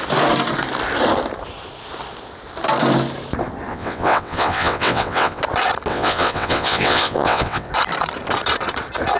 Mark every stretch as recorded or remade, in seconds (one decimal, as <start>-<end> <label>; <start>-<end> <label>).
0.0-3.7 recorded; 3.7-5.4 remade; 5.4-5.9 recorded; 5.9-7.7 remade; 7.7-9.2 recorded